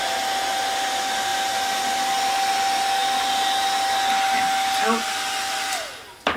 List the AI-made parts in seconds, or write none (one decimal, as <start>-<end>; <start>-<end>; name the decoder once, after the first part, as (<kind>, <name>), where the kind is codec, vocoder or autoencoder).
none